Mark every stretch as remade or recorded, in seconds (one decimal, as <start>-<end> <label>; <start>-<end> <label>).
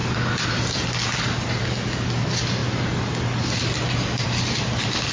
0.0-5.1 recorded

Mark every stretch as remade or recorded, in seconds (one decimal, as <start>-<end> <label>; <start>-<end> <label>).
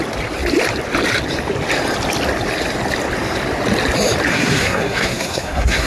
0.0-4.3 recorded; 4.3-5.9 remade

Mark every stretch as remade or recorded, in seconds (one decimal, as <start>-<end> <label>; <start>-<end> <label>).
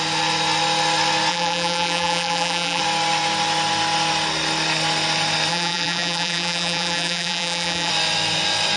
0.0-1.3 recorded; 1.3-2.8 remade; 2.8-5.5 recorded; 5.5-7.9 remade; 7.9-8.8 recorded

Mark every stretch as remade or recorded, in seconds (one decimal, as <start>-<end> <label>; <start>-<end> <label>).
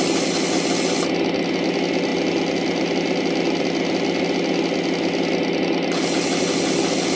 0.0-7.2 recorded